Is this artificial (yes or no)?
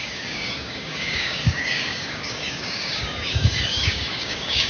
yes